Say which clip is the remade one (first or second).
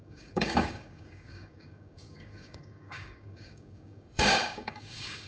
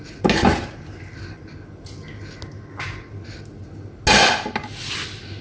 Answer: first